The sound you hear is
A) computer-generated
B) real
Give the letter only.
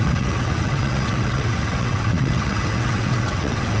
A